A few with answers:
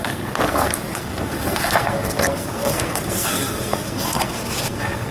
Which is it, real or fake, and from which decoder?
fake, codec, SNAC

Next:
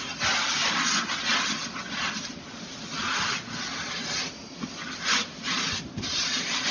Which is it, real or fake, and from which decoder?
real